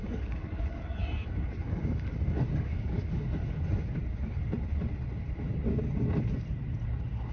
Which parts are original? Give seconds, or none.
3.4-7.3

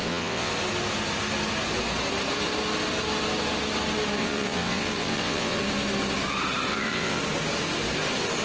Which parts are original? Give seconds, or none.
0.5-4.2; 5.6-6.7; 7.2-8.4